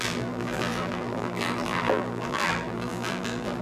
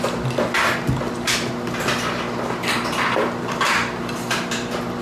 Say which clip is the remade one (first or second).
first